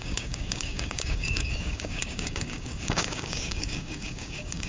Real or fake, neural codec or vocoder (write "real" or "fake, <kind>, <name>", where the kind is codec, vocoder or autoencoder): fake, codec, DAC